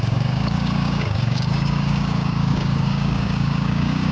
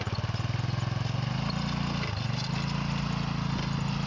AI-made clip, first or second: first